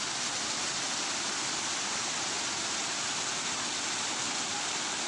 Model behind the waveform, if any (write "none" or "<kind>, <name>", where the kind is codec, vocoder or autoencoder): none